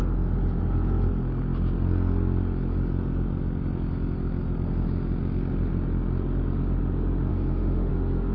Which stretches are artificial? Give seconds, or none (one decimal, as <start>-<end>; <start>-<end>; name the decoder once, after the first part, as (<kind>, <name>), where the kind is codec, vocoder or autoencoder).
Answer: 7.3-7.9 (autoencoder, DAC-VAE)